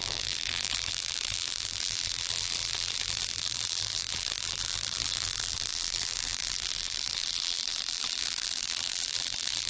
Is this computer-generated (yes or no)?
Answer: yes